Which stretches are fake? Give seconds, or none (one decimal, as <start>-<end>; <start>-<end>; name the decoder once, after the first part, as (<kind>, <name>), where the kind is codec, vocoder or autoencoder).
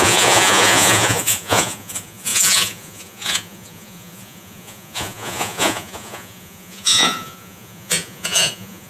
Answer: 0.0-8.9 (vocoder, Vocos)